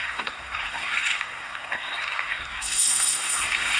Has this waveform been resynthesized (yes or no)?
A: yes